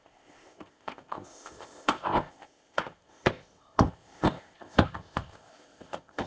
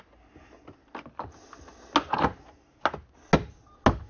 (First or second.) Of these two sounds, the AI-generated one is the first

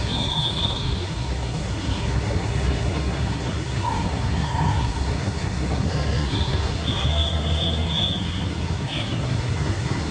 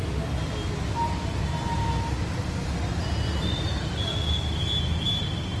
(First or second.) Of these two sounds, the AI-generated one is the first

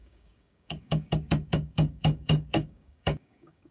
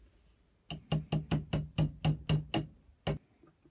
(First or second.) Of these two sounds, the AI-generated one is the first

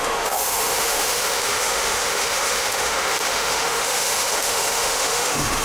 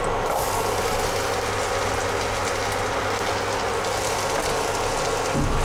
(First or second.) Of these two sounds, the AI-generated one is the first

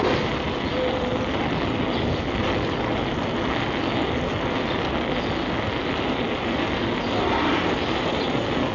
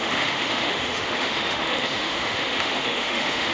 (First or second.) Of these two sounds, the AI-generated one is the second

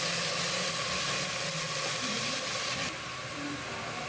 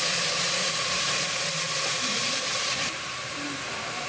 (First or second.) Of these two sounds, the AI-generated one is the second